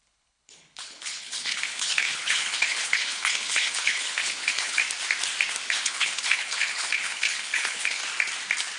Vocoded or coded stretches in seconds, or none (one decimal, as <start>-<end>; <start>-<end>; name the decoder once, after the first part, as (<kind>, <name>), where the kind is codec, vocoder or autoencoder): 0.0-4.8 (codec, HILCodec); 5.7-8.0